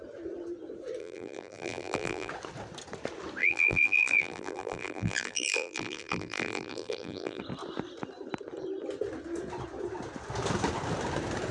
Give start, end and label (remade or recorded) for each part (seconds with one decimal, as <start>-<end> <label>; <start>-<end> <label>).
0.0-1.0 recorded; 1.0-2.3 remade; 2.3-3.4 recorded; 3.4-7.4 remade; 7.4-11.5 recorded